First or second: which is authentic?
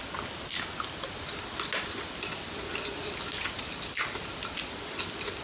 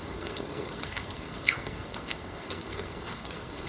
first